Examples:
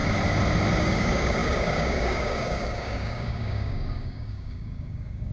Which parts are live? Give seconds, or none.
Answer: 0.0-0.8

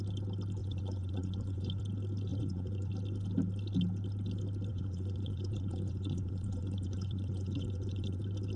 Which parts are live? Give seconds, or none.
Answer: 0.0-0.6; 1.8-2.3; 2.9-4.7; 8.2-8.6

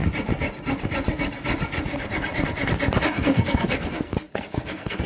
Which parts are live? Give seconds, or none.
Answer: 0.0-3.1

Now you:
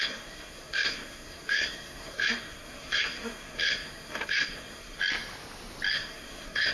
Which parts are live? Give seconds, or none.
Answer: 5.0-5.9

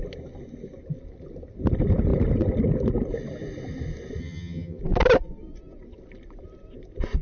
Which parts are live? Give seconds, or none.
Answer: 0.0-4.2; 4.8-7.2

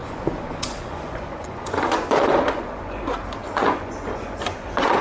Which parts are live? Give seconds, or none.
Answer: 3.0-3.4

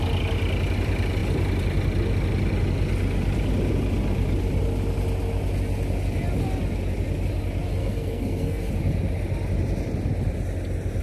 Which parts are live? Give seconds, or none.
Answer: 0.0-7.8; 8.7-11.0

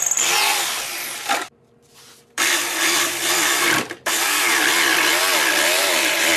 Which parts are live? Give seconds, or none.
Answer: 5.2-5.8